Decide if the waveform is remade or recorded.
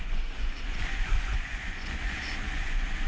remade